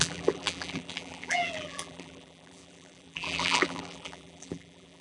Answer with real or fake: fake